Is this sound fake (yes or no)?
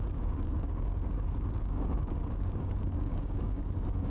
yes